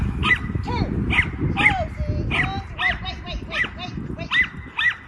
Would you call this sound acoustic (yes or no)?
no